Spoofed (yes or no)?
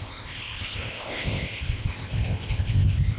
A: yes